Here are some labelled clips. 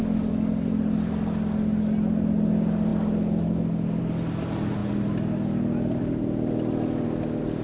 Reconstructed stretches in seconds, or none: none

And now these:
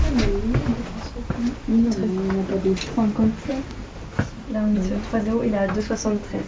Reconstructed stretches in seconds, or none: none

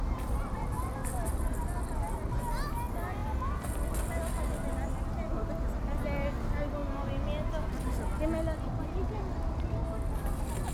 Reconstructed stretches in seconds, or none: none

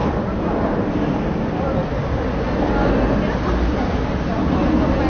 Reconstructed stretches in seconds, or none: none

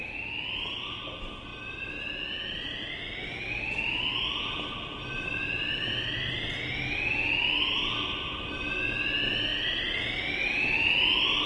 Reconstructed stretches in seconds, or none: none

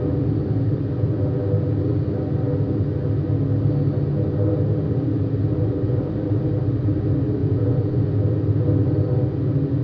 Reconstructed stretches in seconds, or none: 7.4-8.0 (vocoder, Vocos)